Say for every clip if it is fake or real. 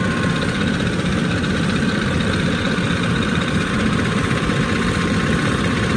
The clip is fake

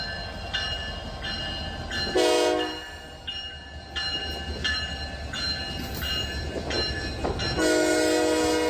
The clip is real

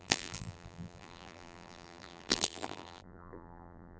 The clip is fake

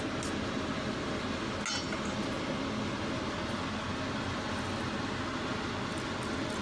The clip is real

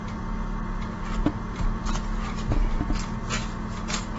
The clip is real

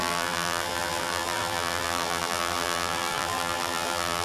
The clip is fake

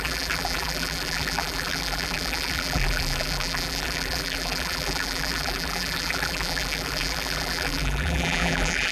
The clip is fake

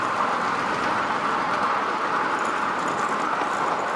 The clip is real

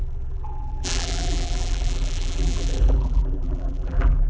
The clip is fake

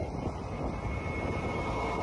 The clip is real